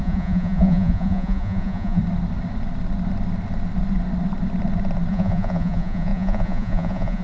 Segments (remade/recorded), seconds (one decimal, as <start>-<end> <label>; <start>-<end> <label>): 0.0-2.0 remade; 2.0-5.1 recorded; 5.1-7.2 remade